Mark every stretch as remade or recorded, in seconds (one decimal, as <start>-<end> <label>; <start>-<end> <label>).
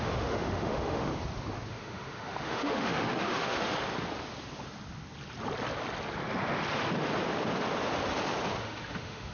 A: 0.0-1.1 remade; 1.1-1.7 recorded; 1.7-3.7 remade; 3.7-8.6 recorded; 8.6-9.3 remade